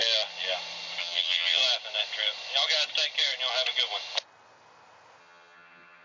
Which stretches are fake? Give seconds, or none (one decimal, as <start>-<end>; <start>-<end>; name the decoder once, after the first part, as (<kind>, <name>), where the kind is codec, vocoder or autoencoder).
1.0-1.6 (vocoder, HiFi-GAN); 5.2-6.0